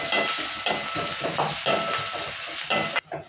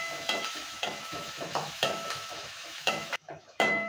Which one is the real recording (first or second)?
first